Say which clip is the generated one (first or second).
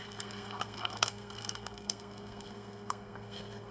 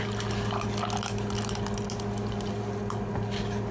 first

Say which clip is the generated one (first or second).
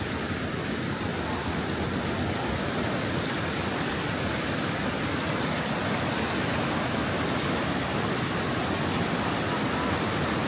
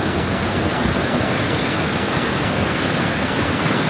second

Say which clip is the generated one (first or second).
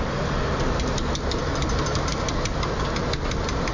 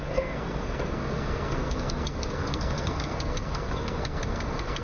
second